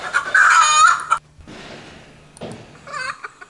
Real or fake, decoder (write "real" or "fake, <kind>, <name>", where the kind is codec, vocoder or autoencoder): real